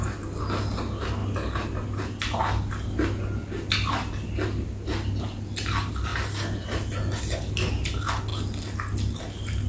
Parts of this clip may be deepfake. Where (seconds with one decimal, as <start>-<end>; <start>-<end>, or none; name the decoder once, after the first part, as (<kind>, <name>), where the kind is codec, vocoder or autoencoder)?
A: none